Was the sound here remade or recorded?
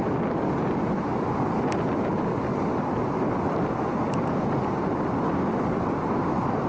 recorded